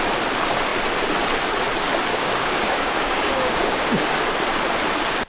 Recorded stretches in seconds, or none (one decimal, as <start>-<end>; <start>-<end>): 0.0-2.1; 4.1-5.3